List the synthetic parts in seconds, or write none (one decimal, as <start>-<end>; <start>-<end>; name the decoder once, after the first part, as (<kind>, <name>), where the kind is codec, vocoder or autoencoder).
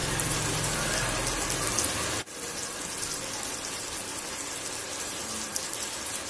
none